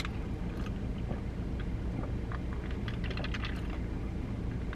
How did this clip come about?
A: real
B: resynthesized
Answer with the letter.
A